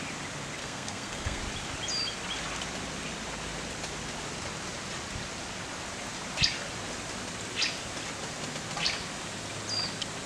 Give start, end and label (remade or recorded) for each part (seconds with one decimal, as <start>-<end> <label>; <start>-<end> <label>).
0.0-0.6 recorded; 0.6-1.4 remade; 1.4-10.3 recorded